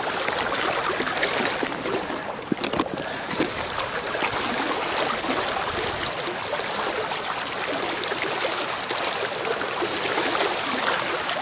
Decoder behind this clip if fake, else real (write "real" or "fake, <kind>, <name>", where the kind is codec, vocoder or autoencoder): real